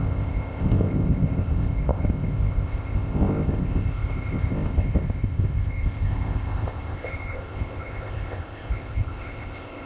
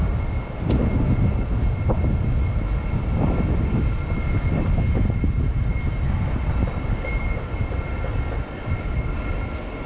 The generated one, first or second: first